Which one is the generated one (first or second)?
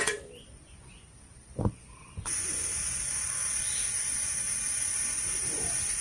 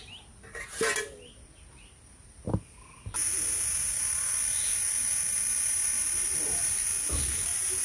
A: first